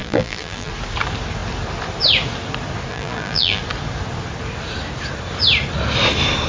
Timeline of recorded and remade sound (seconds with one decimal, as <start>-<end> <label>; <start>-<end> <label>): 0.0-0.7 remade; 0.7-2.9 recorded; 2.9-3.6 remade; 3.6-6.5 recorded

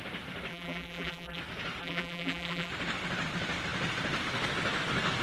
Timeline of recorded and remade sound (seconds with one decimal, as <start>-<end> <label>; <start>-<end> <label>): 0.0-0.5 recorded; 0.5-1.4 remade; 1.4-1.8 recorded; 1.8-2.7 remade; 2.7-5.2 recorded